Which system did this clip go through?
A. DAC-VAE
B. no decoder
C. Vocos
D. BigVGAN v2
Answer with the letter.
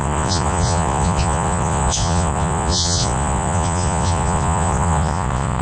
C